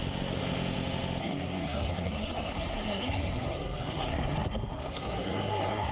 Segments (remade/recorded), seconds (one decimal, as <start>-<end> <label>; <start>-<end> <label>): 0.0-1.2 recorded; 1.2-5.9 remade